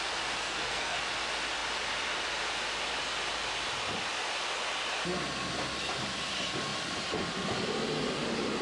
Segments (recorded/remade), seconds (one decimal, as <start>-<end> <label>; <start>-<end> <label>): 0.0-0.4 recorded; 0.4-1.0 remade; 1.0-8.6 recorded

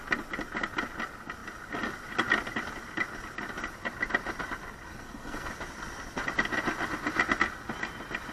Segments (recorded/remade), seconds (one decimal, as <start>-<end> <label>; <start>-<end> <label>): 0.0-4.9 recorded; 4.9-5.5 remade; 5.5-8.3 recorded

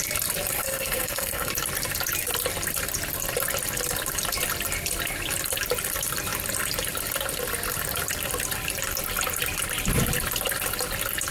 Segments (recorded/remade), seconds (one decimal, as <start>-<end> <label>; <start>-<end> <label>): 0.0-0.6 recorded; 0.6-1.5 remade; 1.5-11.3 recorded

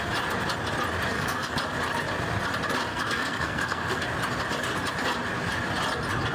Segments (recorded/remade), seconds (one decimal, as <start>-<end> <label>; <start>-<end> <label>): 0.0-1.1 recorded; 1.1-1.6 remade; 1.6-2.9 recorded; 2.9-4.0 remade; 4.0-6.3 recorded

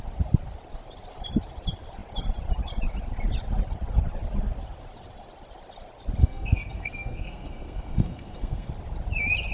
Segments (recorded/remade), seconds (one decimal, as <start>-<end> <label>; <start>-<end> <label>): 0.0-6.2 recorded; 6.2-8.7 remade; 8.7-9.5 recorded

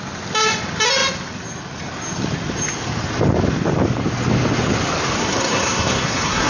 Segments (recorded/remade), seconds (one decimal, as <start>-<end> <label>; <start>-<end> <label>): 0.0-5.2 recorded; 5.2-6.5 remade

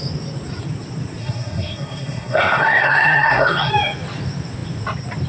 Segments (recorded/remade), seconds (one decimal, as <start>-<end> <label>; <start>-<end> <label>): 0.0-1.2 recorded; 1.2-3.7 remade; 3.7-5.3 recorded

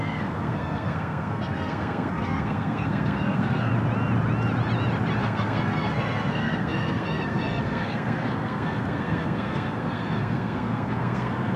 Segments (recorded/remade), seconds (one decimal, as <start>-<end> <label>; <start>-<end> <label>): 0.0-3.7 remade; 3.7-5.2 recorded; 5.2-11.6 remade